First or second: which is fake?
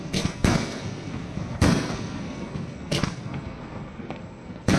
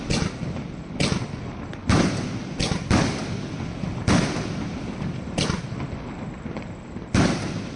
first